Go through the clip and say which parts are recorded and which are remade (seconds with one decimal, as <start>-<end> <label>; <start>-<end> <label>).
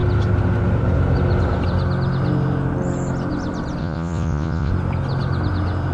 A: 0.0-3.8 recorded; 3.8-4.7 remade; 4.7-5.9 recorded